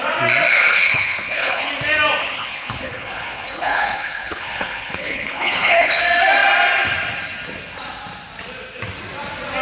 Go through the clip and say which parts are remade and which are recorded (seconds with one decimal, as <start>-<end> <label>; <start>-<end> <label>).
0.0-0.5 recorded; 0.5-1.7 remade; 1.7-2.2 recorded; 2.2-6.0 remade; 6.0-9.6 recorded